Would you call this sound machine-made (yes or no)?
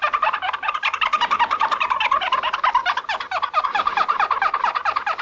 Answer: no